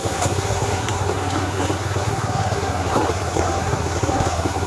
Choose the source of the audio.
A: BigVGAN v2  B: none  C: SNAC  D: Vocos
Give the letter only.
C